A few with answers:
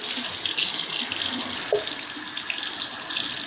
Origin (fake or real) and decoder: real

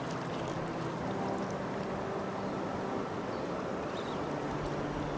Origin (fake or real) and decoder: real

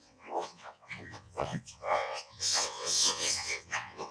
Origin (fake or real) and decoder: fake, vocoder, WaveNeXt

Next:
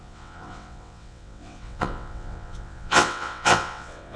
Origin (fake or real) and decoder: fake, vocoder, WaveNeXt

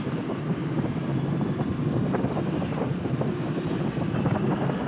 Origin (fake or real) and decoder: real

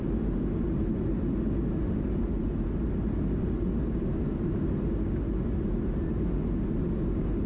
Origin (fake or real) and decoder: real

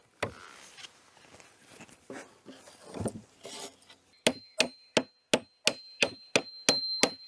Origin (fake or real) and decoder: real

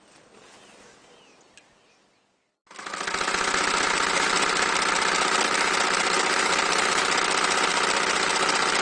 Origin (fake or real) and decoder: real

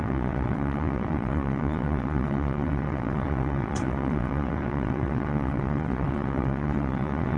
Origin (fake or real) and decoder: fake, vocoder, WaveNeXt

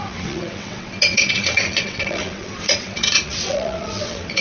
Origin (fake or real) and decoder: fake, vocoder, WaveNeXt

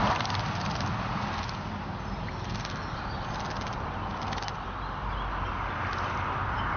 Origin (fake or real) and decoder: real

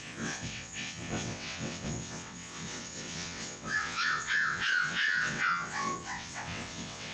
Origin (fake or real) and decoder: fake, vocoder, WaveNeXt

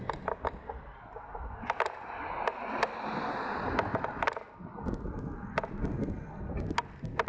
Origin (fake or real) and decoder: real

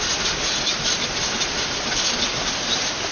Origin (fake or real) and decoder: real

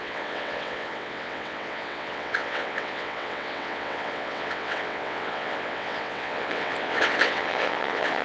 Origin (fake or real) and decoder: fake, vocoder, WaveNeXt